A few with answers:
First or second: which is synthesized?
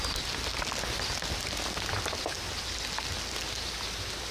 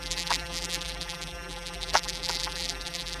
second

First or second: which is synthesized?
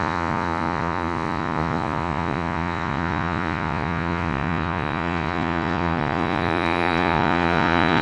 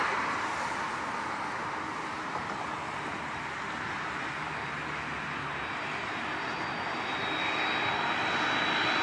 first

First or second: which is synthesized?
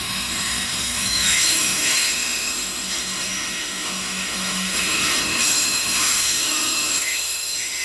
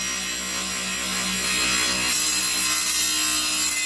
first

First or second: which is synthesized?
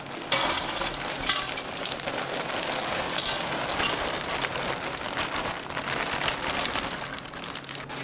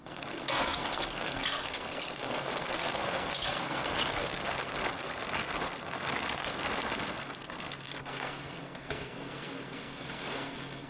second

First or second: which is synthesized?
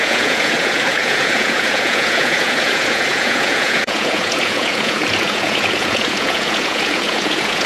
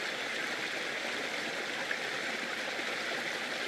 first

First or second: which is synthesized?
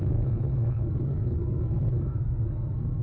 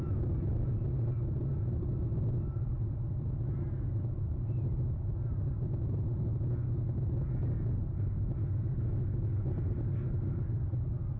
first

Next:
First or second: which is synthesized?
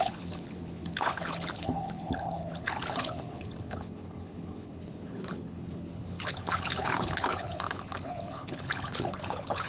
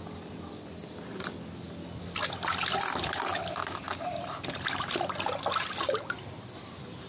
first